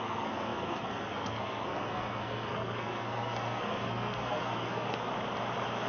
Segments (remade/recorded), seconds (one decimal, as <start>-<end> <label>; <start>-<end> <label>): 0.0-5.1 remade; 5.1-5.9 recorded